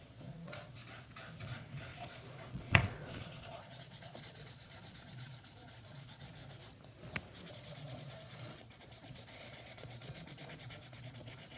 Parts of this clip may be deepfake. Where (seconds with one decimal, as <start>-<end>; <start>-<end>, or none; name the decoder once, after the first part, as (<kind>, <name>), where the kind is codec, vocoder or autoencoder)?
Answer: 0.0-0.8 (vocoder, Vocos); 1.4-6.4; 7.5-11.6